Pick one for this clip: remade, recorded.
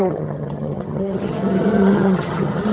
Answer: remade